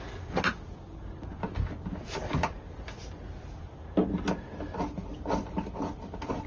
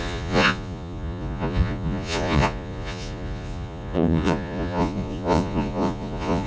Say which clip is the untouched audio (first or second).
first